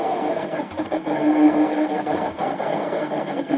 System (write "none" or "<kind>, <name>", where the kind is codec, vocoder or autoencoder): codec, SNAC